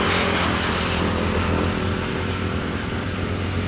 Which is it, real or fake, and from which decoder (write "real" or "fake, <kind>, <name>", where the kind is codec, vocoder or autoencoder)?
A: real